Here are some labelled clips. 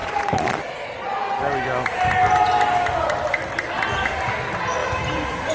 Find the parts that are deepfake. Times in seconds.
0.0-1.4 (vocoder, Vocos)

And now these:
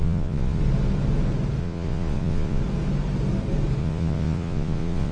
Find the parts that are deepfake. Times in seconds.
0.0-0.6 (vocoder, Vocos); 1.6-2.6; 3.8-5.1

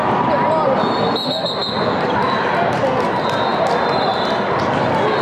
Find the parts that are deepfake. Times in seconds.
none

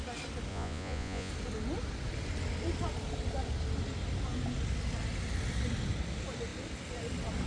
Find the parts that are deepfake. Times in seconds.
0.5-1.3 (vocoder, Vocos)

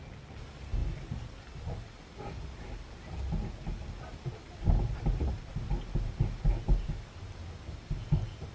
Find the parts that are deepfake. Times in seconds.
none

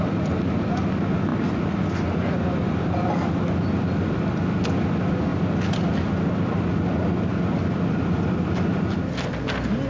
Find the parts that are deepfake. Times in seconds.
none

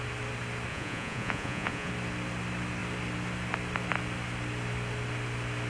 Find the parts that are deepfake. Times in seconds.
0.7-1.9 (vocoder, Vocos)